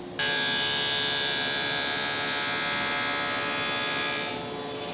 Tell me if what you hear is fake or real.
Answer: real